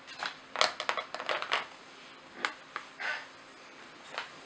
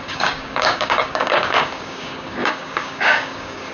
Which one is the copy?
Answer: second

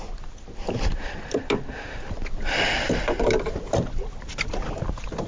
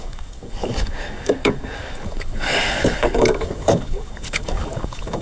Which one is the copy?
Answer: second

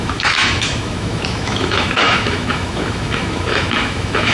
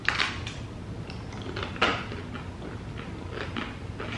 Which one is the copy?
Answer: first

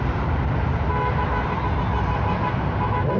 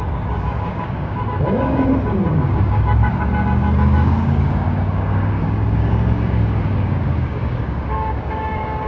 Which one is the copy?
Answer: second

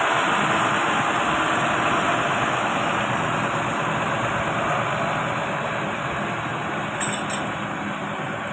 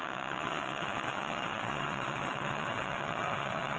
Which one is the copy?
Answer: second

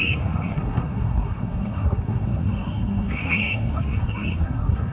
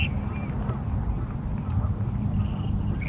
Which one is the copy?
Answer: first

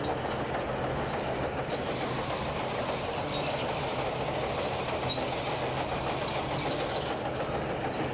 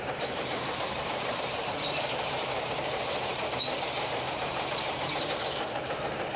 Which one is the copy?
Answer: second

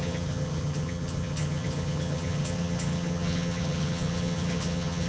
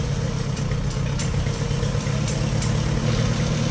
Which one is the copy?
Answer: first